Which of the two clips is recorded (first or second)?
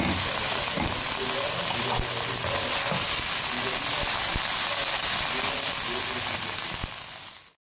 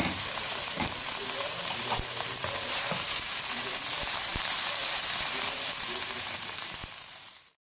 first